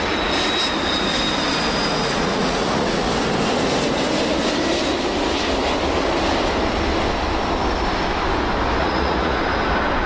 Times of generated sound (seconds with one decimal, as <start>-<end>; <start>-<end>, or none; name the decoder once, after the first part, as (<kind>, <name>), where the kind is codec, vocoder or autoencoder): 2.0-3.1 (vocoder, Vocos); 8.8-9.4